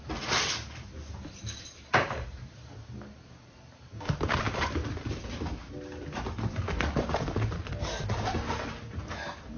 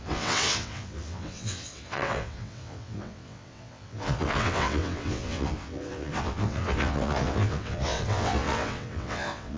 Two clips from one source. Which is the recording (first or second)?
first